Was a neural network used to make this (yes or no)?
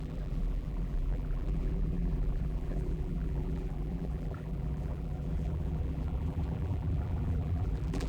yes